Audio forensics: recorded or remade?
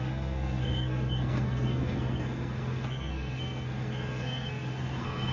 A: remade